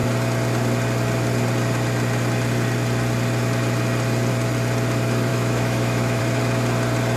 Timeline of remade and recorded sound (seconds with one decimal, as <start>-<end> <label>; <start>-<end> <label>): 0.0-5.3 recorded; 5.3-6.2 remade; 6.2-7.2 recorded